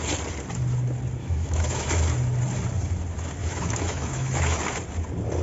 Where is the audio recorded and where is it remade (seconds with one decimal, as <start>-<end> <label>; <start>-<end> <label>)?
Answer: 0.0-1.2 recorded; 1.2-1.9 remade; 1.9-3.4 recorded; 3.4-4.6 remade; 4.6-5.4 recorded